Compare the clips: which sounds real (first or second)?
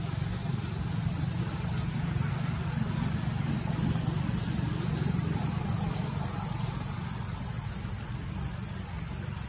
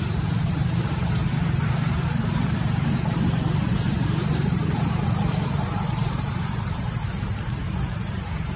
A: first